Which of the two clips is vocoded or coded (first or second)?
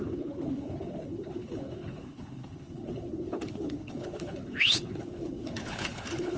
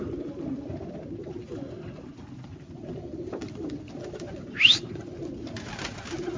first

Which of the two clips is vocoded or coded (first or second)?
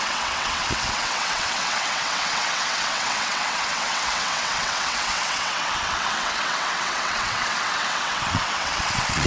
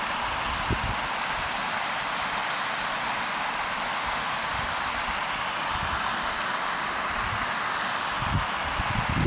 first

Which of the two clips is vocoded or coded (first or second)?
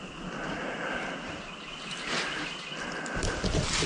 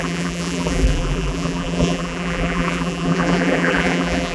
second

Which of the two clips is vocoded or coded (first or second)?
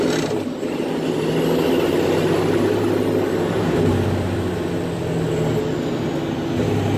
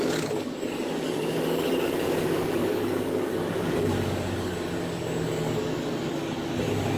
second